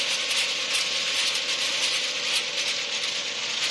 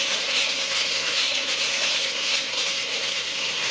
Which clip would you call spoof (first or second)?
second